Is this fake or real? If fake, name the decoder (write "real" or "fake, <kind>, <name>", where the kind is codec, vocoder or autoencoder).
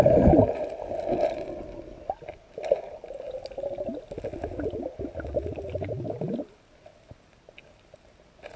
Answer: real